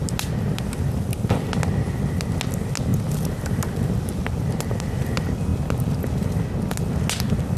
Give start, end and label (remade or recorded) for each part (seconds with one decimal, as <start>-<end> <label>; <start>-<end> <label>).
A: 0.0-7.6 recorded